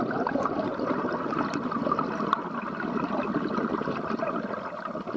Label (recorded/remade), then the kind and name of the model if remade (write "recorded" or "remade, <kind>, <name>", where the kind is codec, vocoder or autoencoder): recorded